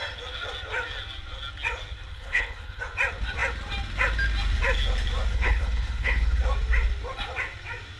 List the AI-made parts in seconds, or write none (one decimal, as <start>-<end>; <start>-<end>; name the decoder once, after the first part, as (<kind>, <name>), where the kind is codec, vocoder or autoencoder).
2.1-2.8 (codec, HILCodec); 5.3-6.4

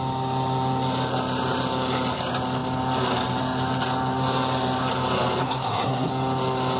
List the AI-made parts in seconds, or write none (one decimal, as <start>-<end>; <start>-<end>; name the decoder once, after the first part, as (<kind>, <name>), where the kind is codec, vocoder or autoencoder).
5.4-6.1 (codec, SNAC)